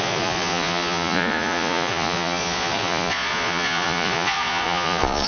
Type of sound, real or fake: fake